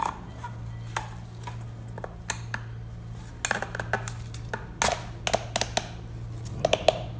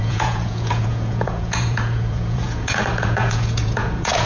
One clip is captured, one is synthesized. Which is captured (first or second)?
first